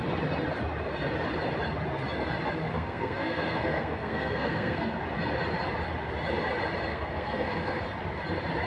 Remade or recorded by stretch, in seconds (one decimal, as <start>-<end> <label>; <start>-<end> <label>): 0.0-2.7 recorded; 2.7-5.0 remade; 5.0-6.9 recorded; 6.9-7.8 remade; 7.8-8.7 recorded